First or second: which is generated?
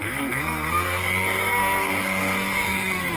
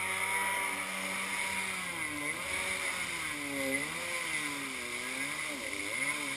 first